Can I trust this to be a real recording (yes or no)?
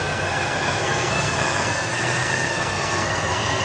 no